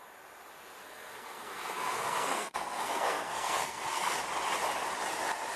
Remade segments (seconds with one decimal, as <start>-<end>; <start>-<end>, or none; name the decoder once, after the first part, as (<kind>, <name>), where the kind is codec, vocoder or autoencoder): 0.8-4.2 (codec, SNAC)